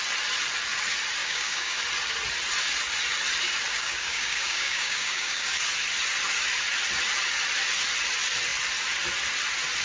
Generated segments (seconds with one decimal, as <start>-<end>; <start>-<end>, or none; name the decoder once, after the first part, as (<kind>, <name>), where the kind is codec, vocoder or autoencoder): 1.2-1.8 (codec, DAC); 3.7-5.6